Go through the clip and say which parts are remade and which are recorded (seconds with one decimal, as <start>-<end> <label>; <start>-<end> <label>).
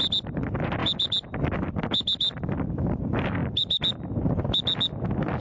0.0-5.4 recorded